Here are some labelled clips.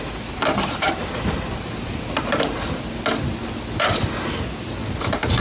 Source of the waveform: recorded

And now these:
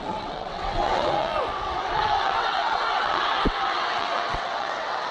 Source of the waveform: remade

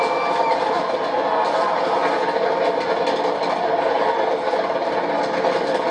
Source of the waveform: recorded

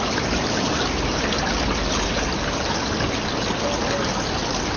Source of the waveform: recorded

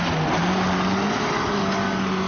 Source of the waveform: recorded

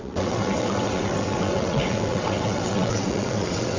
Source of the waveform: remade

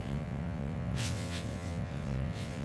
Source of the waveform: remade